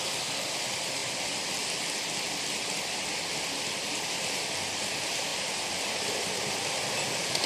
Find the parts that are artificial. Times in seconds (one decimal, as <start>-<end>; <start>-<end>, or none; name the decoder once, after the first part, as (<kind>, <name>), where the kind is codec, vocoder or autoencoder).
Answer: none